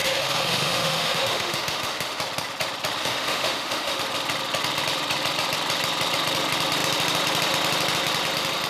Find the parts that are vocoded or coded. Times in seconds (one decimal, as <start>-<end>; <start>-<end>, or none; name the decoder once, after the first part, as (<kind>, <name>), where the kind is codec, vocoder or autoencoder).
0.0-2.2 (autoencoder, DAC-VAE); 3.0-4.0